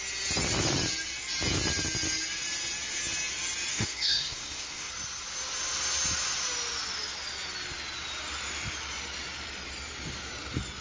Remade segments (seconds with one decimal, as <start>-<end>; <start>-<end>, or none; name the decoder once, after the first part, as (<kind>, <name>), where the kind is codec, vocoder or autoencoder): 3.7-4.9 (codec, SNAC)